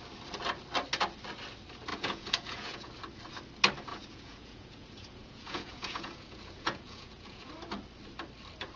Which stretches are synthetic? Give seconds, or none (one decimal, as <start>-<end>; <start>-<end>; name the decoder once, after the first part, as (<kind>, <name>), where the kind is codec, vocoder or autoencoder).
1.9-2.9 (vocoder, Vocos); 3.9-7.5